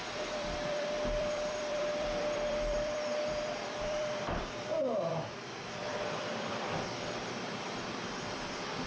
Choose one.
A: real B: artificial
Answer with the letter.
B